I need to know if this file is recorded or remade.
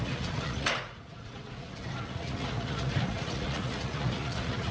remade